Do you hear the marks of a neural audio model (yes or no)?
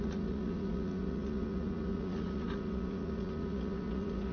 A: yes